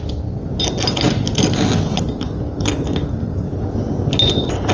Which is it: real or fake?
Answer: real